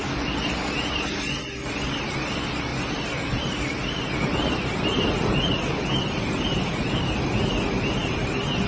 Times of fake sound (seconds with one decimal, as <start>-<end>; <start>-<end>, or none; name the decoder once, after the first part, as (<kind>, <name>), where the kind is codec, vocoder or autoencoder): none